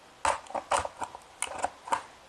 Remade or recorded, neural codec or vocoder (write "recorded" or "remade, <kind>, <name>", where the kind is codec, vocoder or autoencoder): recorded